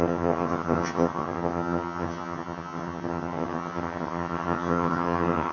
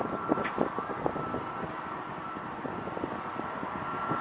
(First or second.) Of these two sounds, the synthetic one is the first